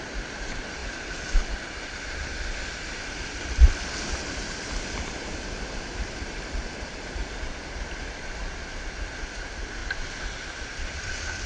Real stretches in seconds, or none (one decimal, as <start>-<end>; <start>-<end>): 0.0-11.5